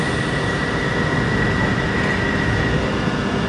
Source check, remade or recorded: recorded